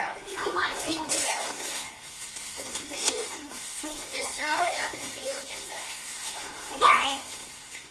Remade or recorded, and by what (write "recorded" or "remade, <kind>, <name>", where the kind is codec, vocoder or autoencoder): remade, codec, SNAC